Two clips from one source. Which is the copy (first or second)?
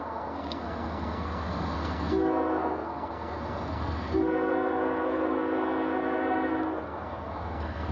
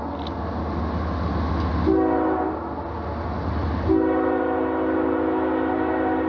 first